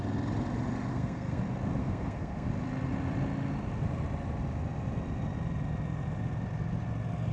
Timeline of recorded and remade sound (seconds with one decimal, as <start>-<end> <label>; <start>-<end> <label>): 0.0-0.9 recorded; 0.9-1.4 remade; 1.4-1.8 recorded; 1.8-2.5 remade; 2.5-7.3 recorded